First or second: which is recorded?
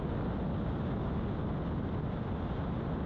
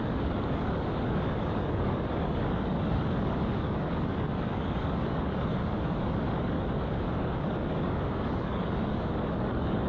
first